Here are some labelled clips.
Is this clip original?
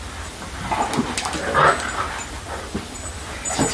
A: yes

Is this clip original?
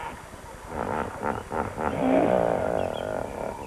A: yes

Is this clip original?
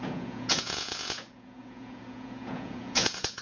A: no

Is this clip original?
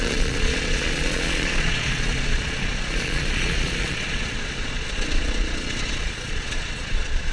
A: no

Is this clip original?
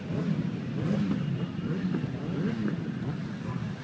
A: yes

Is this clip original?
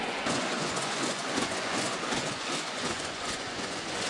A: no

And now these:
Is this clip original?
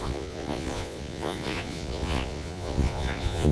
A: no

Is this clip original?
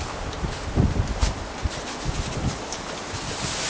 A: yes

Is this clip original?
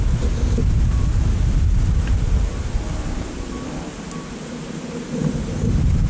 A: yes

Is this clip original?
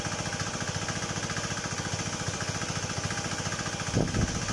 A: yes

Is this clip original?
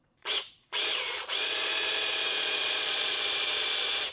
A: no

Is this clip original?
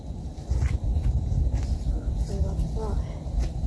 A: yes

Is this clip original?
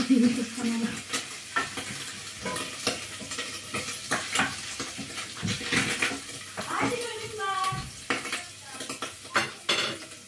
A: yes